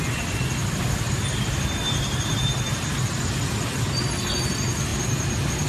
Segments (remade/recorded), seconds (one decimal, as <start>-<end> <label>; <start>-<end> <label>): 0.0-5.7 recorded